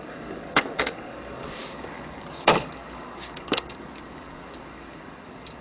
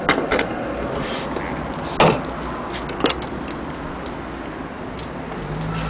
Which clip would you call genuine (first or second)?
second